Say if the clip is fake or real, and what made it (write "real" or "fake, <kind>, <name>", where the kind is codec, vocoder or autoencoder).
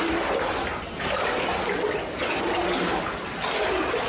real